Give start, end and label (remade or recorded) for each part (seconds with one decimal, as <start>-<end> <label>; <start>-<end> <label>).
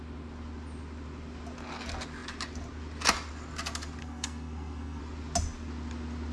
0.0-4.0 recorded; 4.0-5.0 remade; 5.0-6.3 recorded